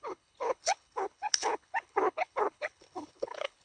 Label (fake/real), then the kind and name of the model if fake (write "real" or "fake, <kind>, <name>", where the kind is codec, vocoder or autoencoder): fake, codec, HILCodec